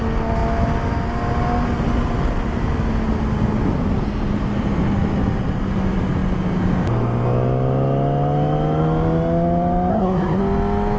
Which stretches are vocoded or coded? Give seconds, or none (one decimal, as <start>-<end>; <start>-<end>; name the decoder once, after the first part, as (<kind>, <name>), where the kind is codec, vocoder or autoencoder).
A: 9.9-10.4 (codec, SNAC)